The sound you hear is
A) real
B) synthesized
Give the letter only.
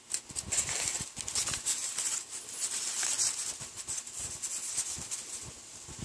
A